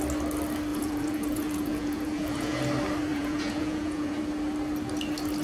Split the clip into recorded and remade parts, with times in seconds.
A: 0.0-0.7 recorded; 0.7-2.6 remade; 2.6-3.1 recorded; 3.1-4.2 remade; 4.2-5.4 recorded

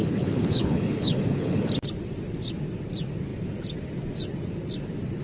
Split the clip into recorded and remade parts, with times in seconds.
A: 0.0-1.6 remade; 1.6-5.2 recorded

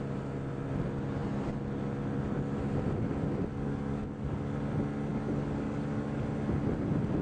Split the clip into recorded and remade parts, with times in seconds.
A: 0.0-3.5 recorded; 3.5-4.4 remade; 4.4-5.1 recorded; 5.1-6.2 remade; 6.2-7.2 recorded

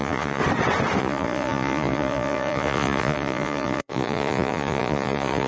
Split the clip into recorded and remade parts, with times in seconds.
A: 0.0-0.4 remade; 0.4-1.0 recorded; 1.0-5.5 remade